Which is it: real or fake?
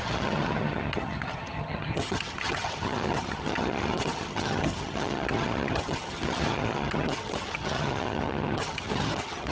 fake